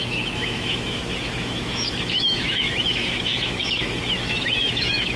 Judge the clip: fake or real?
fake